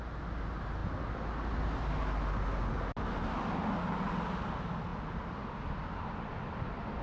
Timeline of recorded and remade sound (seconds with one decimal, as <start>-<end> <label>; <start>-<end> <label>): 0.0-7.0 recorded